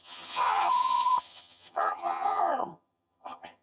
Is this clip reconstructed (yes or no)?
yes